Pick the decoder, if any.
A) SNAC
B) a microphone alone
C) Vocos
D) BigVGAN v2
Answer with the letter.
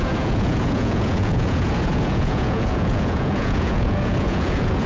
C